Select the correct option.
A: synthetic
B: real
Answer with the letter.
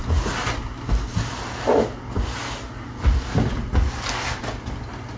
B